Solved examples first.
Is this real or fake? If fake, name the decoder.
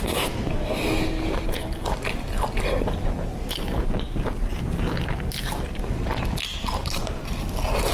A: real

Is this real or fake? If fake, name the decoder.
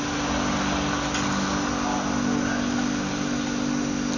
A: real